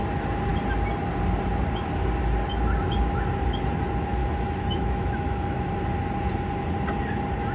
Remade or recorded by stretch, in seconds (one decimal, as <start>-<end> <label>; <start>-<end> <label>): 0.0-4.2 recorded; 4.2-5.7 remade; 5.7-7.5 recorded

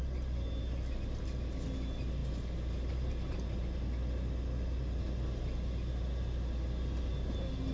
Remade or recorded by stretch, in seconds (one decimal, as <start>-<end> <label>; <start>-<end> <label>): 0.0-7.7 recorded

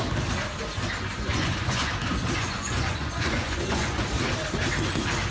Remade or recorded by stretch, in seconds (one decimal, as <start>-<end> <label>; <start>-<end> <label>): 0.0-1.1 recorded; 1.1-1.9 remade; 1.9-2.4 recorded; 2.4-4.1 remade; 4.1-5.3 recorded

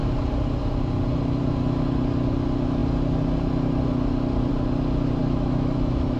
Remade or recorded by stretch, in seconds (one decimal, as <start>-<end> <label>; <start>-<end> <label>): 0.0-5.2 recorded; 5.2-6.2 remade